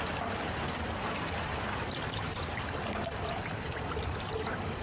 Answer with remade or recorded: remade